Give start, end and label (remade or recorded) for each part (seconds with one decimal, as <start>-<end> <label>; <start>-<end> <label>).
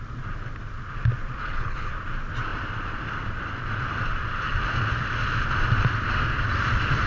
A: 0.0-1.4 recorded; 1.4-1.9 remade; 1.9-7.1 recorded